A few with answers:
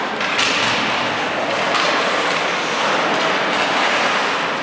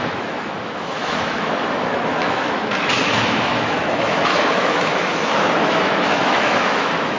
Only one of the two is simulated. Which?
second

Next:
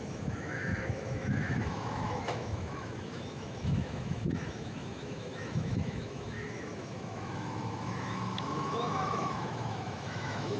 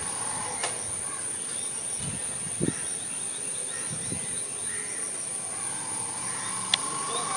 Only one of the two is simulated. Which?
first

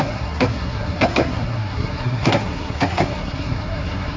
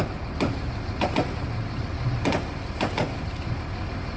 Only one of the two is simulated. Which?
first